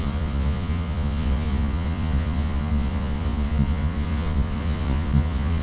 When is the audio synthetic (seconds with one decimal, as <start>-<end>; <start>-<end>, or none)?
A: 0.0-5.6